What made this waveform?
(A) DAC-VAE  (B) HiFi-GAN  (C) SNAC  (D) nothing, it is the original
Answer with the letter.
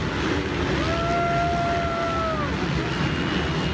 D